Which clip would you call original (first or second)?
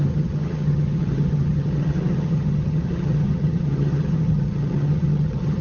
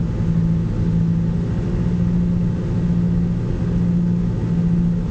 second